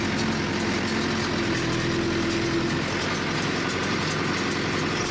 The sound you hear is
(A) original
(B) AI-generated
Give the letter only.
A